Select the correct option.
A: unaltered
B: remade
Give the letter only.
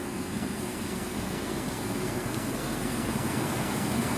B